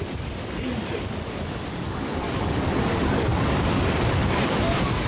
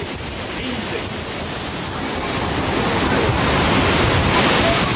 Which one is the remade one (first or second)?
first